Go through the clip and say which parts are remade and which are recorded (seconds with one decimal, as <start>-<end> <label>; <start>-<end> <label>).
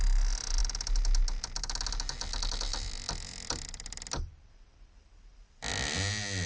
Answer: 0.0-6.5 recorded